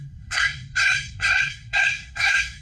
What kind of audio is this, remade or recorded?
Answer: remade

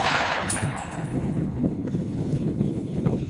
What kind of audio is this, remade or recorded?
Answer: remade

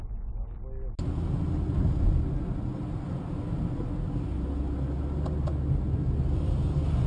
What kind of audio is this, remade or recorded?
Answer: recorded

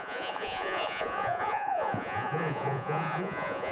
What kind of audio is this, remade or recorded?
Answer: remade